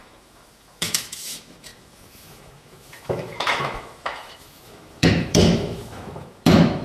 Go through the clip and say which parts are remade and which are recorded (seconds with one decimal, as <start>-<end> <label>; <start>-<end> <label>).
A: 0.0-6.8 remade